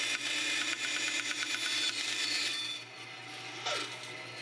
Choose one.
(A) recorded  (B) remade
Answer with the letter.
A